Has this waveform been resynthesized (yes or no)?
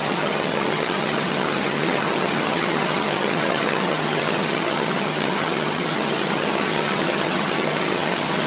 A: yes